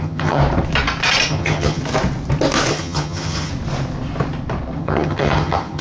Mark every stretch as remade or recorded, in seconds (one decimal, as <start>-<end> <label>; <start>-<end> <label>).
0.0-0.4 remade; 0.4-1.3 recorded; 1.3-1.8 remade; 1.8-2.7 recorded; 2.7-3.5 remade; 3.5-4.8 recorded; 4.8-5.8 remade